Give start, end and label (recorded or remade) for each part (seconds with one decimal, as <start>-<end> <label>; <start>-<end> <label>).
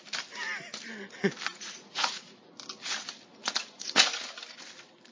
0.0-1.5 recorded; 1.5-2.5 remade; 2.5-3.3 recorded; 3.3-4.1 remade; 4.1-5.1 recorded